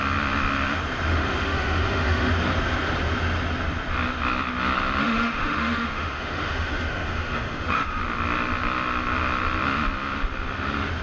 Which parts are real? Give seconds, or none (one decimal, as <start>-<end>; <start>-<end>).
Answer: 0.0-1.1; 2.3-5.0; 8.0-11.0